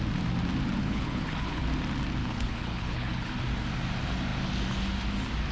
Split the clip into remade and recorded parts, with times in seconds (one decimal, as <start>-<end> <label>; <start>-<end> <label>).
0.0-0.8 recorded; 0.8-1.6 remade; 1.6-2.2 recorded; 2.2-3.3 remade; 3.3-5.5 recorded